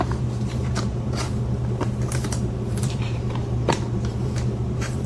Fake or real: fake